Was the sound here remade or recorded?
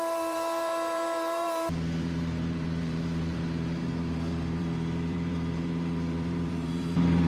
remade